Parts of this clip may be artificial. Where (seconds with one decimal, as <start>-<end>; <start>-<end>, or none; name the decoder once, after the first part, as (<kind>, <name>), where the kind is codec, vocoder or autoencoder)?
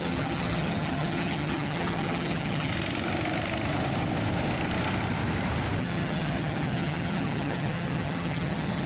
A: 0.0-2.7 (vocoder, HiFi-GAN); 5.8-8.9